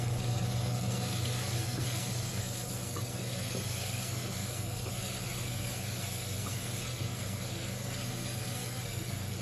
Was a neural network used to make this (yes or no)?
yes